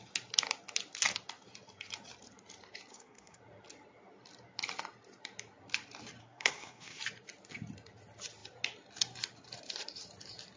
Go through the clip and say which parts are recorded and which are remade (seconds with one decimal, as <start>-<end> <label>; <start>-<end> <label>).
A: 0.0-2.9 recorded; 2.9-3.4 remade; 3.4-6.2 recorded; 6.2-7.0 remade; 7.0-10.6 recorded

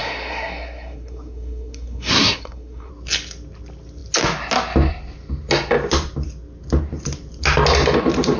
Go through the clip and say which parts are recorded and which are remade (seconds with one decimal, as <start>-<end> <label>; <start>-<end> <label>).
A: 0.0-2.9 remade; 2.9-8.4 recorded

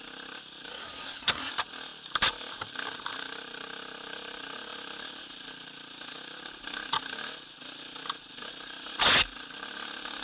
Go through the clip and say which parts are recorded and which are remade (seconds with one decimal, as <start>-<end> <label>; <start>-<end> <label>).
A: 0.0-0.7 recorded; 0.7-1.5 remade; 1.5-10.2 recorded

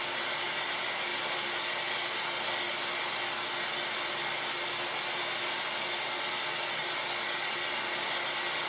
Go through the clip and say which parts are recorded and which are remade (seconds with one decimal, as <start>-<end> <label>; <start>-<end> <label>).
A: 0.0-8.7 recorded

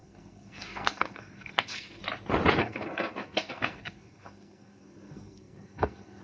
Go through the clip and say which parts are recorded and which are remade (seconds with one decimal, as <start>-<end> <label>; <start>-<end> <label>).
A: 0.0-2.0 remade; 2.0-2.6 recorded; 2.6-6.2 remade